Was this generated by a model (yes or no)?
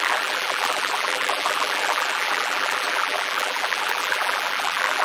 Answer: yes